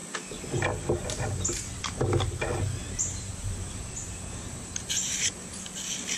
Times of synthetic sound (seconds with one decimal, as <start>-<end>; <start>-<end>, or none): 2.8-5.3